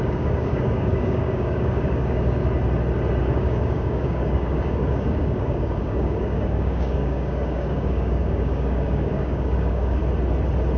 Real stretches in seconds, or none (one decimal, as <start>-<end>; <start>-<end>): 2.4-3.2; 10.0-10.8